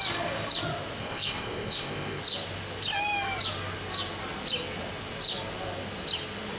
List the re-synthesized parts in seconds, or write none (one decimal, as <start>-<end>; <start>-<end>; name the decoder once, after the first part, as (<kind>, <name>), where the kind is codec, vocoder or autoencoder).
1.0-2.2 (codec, ZipCodec)